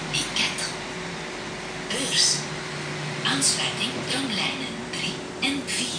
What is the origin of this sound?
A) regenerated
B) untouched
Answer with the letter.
B